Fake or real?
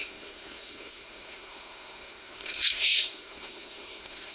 fake